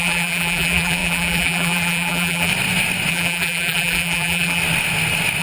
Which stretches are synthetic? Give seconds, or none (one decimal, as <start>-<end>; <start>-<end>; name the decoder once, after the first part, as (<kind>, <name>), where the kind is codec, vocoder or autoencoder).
0.0-2.5 (vocoder, BigVGAN v2); 3.1-4.6